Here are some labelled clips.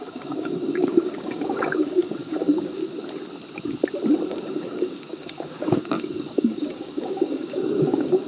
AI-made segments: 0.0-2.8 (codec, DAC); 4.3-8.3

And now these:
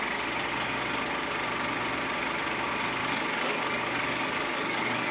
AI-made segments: 3.0-5.1 (codec, DAC)

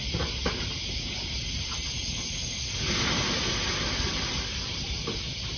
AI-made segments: none

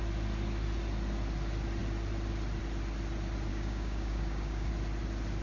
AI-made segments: 3.5-4.7 (codec, DAC)

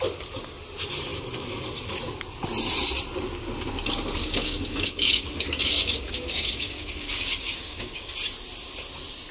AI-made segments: 4.2-8.1 (codec, DAC)

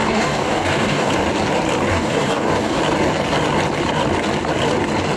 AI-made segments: 0.0-1.1 (codec, DAC); 1.9-2.8

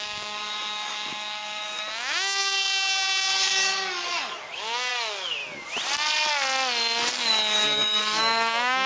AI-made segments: 0.0-5.4 (codec, DAC); 7.1-8.9

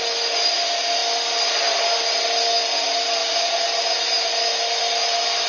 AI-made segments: none